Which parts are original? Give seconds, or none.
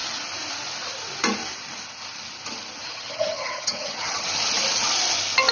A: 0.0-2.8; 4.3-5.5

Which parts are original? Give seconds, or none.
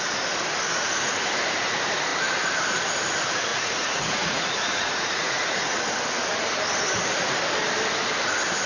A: 0.0-3.5; 5.8-8.7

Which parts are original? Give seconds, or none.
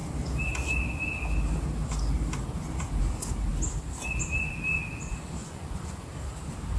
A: 0.0-5.4; 6.1-6.8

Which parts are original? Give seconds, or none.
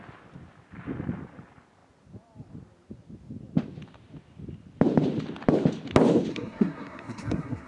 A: 0.0-6.3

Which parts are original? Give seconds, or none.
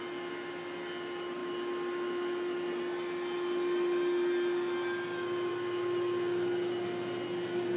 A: 0.0-7.8